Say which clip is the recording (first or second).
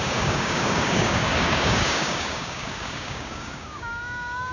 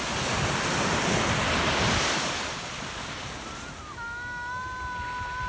second